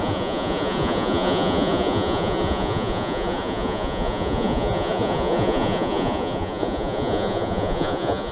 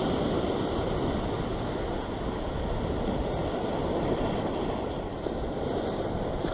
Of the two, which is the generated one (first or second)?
first